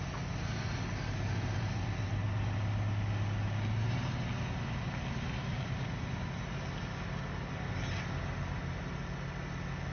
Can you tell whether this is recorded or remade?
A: recorded